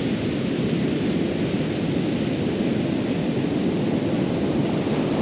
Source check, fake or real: real